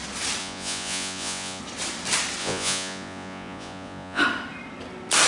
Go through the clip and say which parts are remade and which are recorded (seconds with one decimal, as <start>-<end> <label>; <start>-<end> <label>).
0.0-0.4 recorded; 0.4-1.6 remade; 1.6-2.4 recorded; 2.4-4.2 remade; 4.2-5.3 recorded